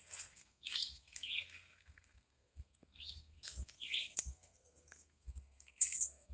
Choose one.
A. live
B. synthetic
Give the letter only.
B